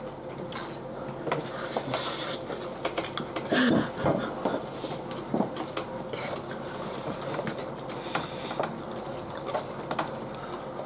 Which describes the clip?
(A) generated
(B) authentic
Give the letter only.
B